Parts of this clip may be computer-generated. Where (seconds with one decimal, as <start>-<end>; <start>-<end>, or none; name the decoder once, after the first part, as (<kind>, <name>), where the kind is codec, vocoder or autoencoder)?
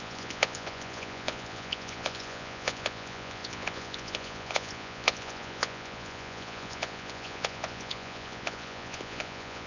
0.0-9.7 (vocoder, Vocos)